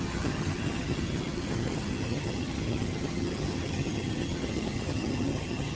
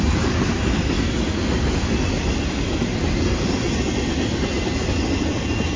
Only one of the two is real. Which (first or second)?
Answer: second